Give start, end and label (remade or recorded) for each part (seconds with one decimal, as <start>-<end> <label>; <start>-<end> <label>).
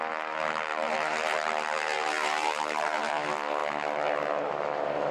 0.0-0.7 recorded; 0.7-3.1 remade; 3.1-5.1 recorded